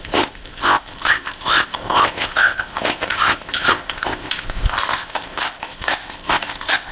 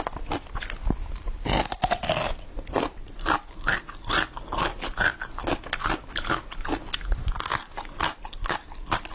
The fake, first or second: first